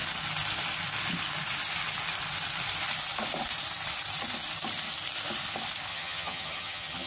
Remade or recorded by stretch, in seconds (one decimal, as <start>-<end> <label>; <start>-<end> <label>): 0.0-5.9 recorded; 5.9-7.1 remade